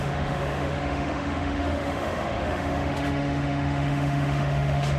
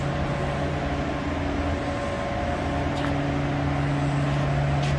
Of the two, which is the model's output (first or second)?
first